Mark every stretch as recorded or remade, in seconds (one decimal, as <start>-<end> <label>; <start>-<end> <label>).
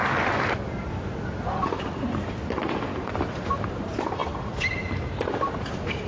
0.0-3.7 recorded; 3.7-4.2 remade; 4.2-6.1 recorded